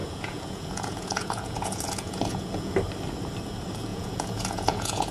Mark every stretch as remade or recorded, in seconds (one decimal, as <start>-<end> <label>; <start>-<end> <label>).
0.0-2.7 remade; 2.7-3.9 recorded; 3.9-5.1 remade